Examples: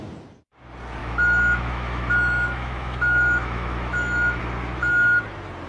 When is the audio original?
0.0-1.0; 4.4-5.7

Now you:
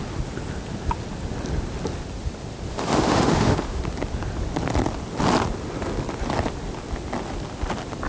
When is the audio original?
0.0-2.7; 3.8-8.1

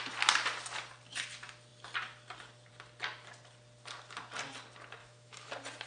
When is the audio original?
0.0-5.0; 5.5-5.9

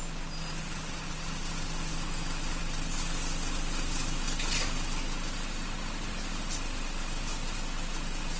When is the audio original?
0.0-1.9; 2.6-8.4

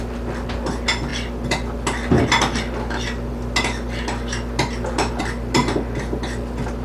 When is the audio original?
0.0-6.8

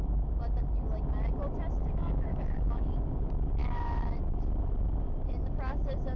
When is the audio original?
0.0-1.8; 2.8-3.6; 4.2-6.2